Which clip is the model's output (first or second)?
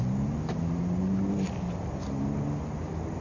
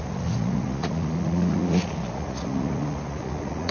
second